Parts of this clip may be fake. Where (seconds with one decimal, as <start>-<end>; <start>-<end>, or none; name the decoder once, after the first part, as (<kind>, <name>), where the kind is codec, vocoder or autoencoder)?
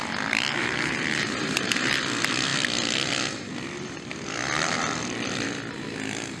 0.6-2.0 (vocoder, BigVGAN v2)